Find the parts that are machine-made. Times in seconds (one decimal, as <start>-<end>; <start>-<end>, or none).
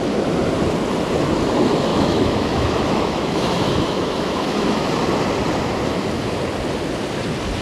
1.9-4.8